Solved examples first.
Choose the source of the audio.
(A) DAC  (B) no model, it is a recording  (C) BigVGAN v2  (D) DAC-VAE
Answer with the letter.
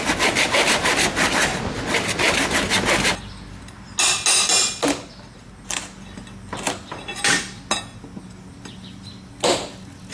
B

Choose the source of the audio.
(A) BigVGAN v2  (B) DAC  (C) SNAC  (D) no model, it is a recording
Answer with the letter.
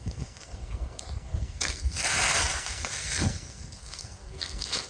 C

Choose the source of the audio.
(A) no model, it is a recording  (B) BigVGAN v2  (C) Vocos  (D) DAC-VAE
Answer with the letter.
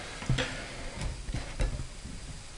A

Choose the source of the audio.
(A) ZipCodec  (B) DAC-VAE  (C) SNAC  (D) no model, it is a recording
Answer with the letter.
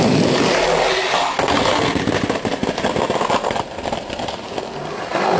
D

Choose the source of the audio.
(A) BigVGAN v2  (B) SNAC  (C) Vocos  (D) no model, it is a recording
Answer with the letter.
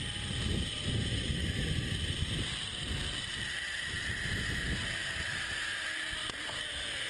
D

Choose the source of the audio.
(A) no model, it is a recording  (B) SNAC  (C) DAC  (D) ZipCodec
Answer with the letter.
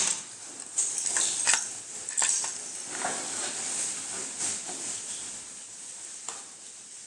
A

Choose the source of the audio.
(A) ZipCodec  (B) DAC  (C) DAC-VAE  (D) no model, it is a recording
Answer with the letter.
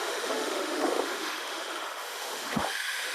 C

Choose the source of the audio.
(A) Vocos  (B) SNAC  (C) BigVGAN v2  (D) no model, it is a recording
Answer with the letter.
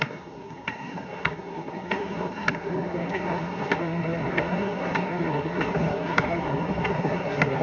B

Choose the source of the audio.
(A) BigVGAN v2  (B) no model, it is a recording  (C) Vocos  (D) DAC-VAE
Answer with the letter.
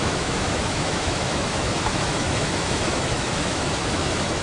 D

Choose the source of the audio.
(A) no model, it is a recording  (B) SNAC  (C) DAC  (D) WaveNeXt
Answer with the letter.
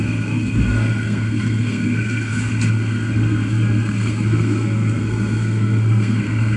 B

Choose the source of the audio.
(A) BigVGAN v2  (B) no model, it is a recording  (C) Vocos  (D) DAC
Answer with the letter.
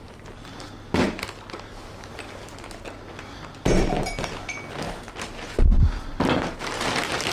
B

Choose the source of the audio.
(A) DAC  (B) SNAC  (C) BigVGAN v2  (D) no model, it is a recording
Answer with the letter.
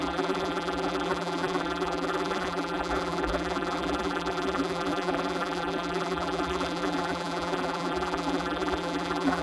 C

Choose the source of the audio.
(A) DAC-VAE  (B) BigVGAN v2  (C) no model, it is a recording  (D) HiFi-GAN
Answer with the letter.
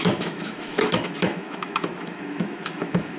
A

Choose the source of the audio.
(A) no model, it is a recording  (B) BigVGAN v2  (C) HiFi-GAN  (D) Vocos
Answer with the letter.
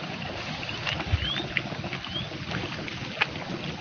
A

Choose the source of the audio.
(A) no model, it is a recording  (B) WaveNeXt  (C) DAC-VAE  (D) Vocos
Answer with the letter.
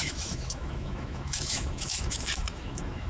C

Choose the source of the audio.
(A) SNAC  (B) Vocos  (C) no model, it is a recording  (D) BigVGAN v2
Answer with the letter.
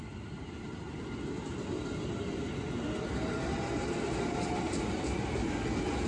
C